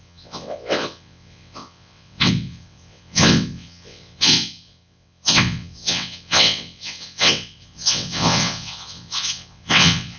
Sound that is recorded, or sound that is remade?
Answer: remade